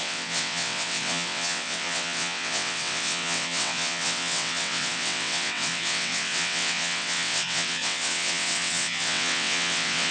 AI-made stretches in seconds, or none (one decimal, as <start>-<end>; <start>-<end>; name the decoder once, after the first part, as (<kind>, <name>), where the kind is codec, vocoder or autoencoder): 0.0-10.1 (vocoder, WaveNeXt)